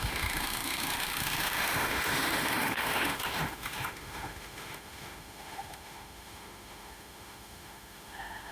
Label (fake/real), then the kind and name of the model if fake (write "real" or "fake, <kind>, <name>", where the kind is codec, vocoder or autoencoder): fake, autoencoder, DAC-VAE